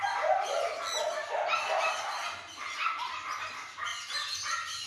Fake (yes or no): no